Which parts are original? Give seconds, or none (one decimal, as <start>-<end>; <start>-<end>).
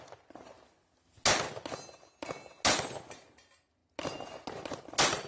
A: 0.0-5.3